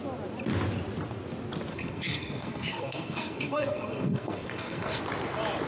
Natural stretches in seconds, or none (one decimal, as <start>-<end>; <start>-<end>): 0.0-1.7; 5.0-5.7